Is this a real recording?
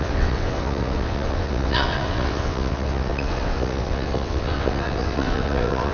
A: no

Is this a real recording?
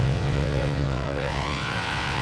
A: no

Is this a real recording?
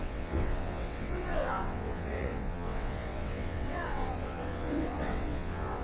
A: no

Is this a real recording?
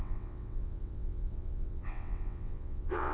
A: no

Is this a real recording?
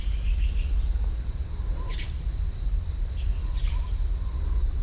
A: yes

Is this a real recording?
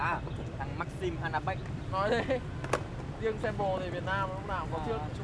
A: yes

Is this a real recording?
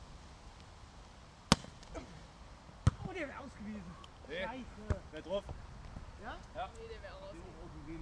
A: yes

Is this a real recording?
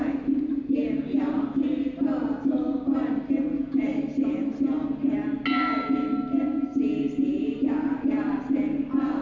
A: yes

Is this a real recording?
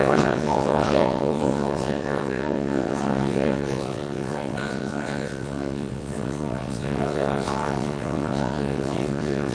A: no